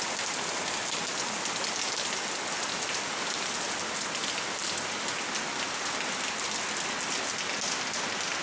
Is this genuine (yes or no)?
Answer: yes